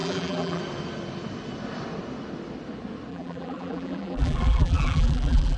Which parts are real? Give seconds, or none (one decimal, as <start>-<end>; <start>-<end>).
0.6-3.1